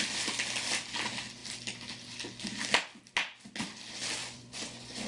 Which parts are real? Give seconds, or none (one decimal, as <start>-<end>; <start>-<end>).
0.0-4.2